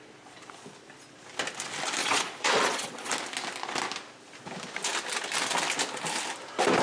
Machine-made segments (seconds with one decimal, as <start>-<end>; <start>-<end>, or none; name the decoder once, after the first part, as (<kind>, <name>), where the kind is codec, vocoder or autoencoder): 2.0-3.1 (vocoder, Vocos)